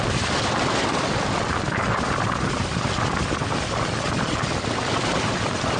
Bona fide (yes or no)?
yes